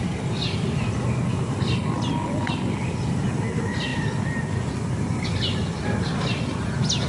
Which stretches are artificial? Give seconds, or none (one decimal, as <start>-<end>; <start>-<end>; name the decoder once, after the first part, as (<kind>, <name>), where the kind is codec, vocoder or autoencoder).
none